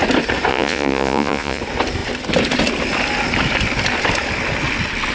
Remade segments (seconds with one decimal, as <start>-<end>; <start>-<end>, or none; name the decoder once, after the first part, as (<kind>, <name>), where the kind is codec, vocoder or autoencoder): 0.5-1.6 (vocoder, Vocos)